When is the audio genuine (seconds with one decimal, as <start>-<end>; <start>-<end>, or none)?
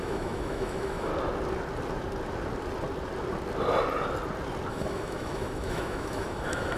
1.1-4.7